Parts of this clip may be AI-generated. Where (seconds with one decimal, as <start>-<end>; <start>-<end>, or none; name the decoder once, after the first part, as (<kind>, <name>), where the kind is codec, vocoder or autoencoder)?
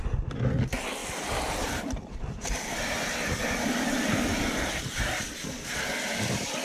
1.0-3.8 (vocoder, BigVGAN v2)